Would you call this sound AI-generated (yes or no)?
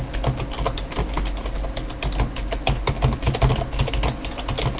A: no